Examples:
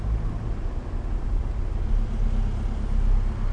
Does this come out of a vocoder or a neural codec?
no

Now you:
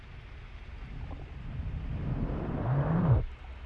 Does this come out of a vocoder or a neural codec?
no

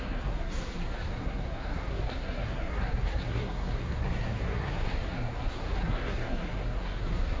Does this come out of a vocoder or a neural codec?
yes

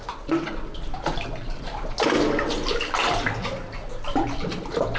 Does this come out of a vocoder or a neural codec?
no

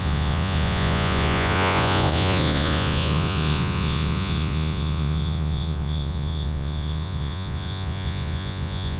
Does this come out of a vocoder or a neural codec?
yes